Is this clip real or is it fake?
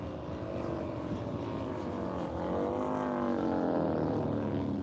real